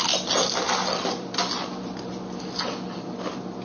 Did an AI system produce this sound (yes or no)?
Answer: no